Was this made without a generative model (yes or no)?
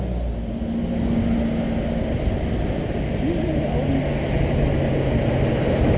yes